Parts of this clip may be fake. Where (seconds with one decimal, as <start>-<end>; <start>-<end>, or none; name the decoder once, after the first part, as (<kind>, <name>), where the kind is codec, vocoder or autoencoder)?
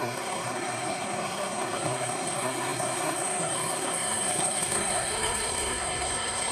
0.0-6.5 (codec, SNAC)